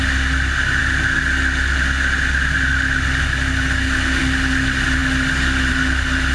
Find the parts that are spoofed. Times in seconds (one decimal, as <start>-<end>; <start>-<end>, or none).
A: none